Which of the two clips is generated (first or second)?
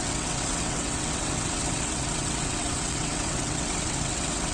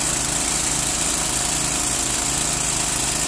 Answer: first